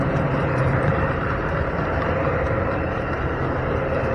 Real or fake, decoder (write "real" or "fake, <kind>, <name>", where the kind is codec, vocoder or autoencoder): fake, vocoder, BigVGAN v2